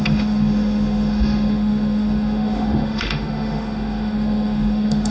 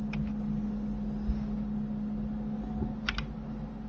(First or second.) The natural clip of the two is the second